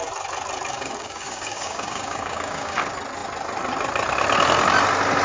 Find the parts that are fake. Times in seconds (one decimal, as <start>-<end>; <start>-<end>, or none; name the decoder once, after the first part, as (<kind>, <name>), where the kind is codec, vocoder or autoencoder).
0.7-2.8 (codec, DAC)